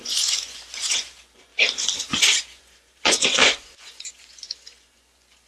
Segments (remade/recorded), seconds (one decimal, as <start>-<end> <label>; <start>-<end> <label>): 0.0-1.5 remade; 1.5-2.0 recorded; 2.0-5.5 remade